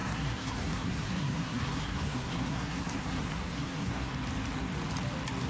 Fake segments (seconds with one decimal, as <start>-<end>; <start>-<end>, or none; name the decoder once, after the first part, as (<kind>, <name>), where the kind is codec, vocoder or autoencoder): 0.0-4.1 (codec, SNAC)